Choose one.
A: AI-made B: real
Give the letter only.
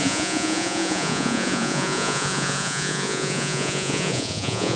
A